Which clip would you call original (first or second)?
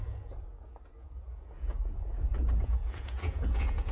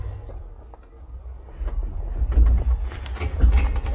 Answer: second